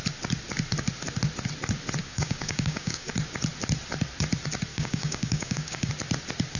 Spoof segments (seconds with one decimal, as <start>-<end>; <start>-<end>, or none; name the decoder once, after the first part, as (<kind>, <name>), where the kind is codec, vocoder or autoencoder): 2.0-3.1 (codec, DAC); 4.7-5.9